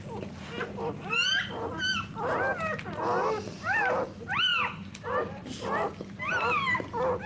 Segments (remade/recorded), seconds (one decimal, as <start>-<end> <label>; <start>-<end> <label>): 0.0-7.3 recorded